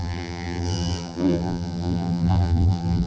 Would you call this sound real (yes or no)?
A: no